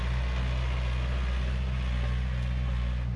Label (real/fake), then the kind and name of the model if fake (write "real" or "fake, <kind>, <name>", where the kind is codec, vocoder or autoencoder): real